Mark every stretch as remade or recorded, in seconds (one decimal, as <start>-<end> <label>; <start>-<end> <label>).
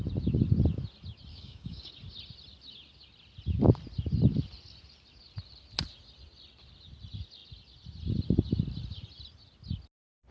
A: 0.0-1.3 recorded; 1.3-1.9 remade; 1.9-10.3 recorded